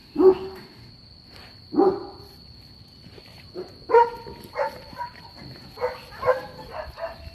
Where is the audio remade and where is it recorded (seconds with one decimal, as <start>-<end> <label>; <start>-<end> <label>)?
0.0-0.9 remade; 0.9-7.3 recorded